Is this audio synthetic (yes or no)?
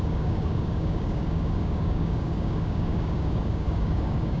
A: yes